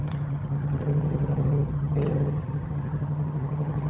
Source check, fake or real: fake